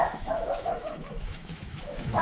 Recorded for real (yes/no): no